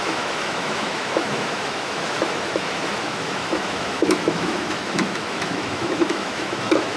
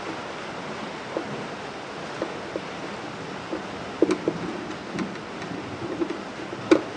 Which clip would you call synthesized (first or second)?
first